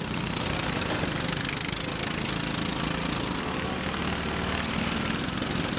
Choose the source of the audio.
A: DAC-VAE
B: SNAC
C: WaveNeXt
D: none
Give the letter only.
D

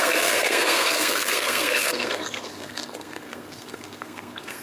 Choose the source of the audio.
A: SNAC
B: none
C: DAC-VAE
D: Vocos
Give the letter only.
A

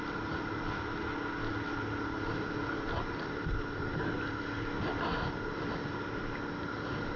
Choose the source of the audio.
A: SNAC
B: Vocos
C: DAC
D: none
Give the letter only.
D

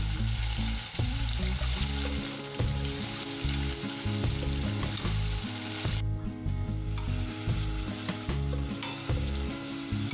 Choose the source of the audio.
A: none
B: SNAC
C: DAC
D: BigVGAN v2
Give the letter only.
A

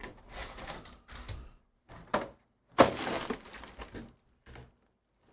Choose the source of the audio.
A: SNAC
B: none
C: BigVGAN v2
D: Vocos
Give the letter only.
B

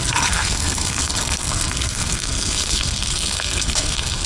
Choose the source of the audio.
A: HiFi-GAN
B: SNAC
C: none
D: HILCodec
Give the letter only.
B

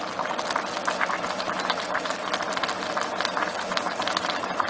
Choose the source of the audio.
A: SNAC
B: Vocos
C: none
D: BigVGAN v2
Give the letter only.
C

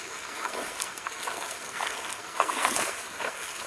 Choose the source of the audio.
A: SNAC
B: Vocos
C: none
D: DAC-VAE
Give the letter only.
A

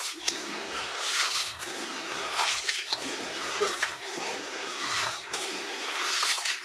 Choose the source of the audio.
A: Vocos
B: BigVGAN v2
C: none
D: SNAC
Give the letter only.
D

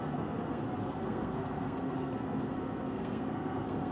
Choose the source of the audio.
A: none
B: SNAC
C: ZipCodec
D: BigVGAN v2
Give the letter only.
B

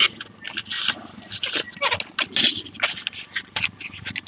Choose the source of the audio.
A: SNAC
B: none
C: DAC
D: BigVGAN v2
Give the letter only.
B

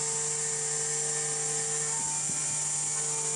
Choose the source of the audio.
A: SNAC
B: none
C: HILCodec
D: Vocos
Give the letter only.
B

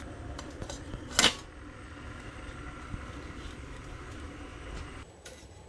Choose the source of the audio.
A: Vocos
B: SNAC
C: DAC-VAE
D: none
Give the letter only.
D